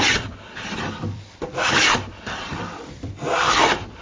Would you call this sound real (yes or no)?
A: no